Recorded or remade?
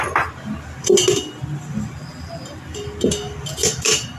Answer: recorded